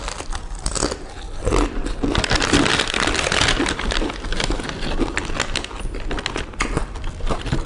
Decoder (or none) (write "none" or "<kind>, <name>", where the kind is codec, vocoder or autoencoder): none